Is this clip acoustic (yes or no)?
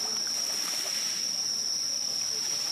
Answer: yes